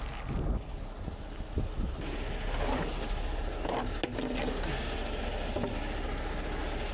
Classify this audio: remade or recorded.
recorded